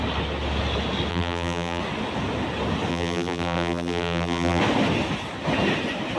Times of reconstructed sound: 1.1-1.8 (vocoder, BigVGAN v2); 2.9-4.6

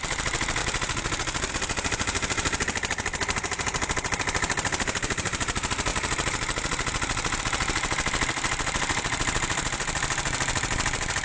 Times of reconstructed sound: 0.0-0.6 (vocoder, BigVGAN v2); 1.5-5.9; 7.4-11.2

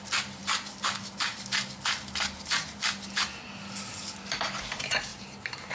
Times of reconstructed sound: 5.1-5.7 (vocoder, BigVGAN v2)

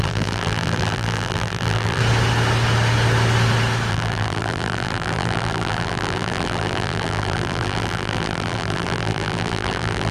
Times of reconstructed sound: 0.0-2.0 (vocoder, BigVGAN v2); 3.9-10.1

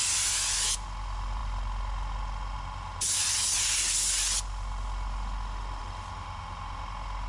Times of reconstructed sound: none